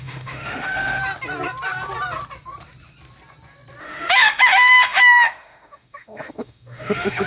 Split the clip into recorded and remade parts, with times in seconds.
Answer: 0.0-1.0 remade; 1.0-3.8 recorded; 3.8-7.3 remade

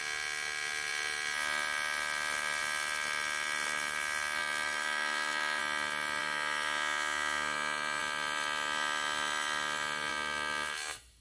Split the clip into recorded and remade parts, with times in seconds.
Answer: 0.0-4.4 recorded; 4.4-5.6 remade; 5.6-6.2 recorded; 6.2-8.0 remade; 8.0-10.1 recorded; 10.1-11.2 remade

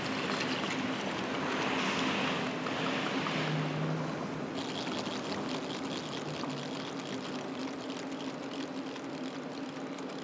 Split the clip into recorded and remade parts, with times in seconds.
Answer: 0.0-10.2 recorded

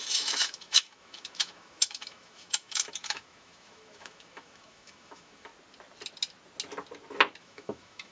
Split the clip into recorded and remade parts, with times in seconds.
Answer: 0.0-5.5 remade; 5.5-7.4 recorded; 7.4-8.1 remade

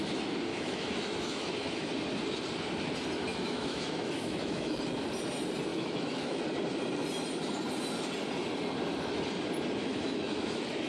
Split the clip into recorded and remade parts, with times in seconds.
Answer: 0.0-0.5 recorded; 0.5-1.9 remade; 1.9-3.3 recorded; 3.3-4.8 remade; 4.8-5.7 recorded; 5.7-6.4 remade; 6.4-9.8 recorded; 9.8-10.9 remade

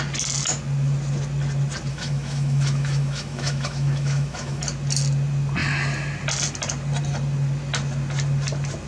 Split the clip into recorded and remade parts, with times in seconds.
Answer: 0.0-1.9 recorded; 1.9-4.6 remade; 4.6-8.9 recorded